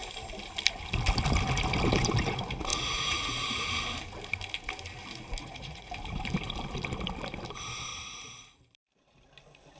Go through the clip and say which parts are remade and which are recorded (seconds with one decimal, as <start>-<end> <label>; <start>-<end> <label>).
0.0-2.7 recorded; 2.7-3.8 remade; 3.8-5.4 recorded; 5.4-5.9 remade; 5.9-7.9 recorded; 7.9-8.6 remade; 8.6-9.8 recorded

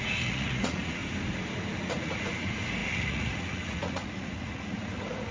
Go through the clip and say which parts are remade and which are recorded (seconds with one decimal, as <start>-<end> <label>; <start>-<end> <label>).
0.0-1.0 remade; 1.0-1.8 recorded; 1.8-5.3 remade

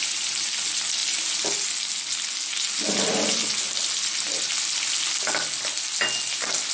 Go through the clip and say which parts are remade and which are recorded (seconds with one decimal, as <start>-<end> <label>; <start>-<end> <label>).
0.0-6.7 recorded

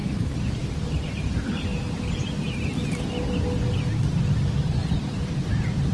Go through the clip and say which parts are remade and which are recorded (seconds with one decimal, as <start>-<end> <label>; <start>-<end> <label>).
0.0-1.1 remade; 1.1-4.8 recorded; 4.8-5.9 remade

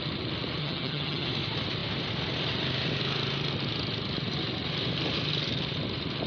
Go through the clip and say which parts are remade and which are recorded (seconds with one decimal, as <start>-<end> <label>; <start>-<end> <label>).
0.0-0.6 recorded; 0.6-1.3 remade; 1.3-6.3 recorded